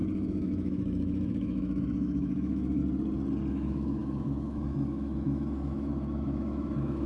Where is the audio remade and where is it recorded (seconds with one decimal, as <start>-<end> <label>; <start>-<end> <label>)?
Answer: 0.0-2.8 remade; 2.8-3.5 recorded; 3.5-7.1 remade